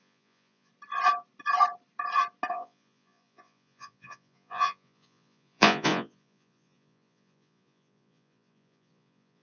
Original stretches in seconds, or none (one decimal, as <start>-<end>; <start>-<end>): 0.7-2.5